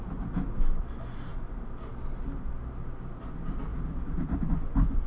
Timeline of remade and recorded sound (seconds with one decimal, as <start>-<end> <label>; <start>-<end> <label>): 0.0-5.1 recorded